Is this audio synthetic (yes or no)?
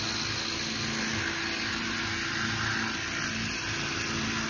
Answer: no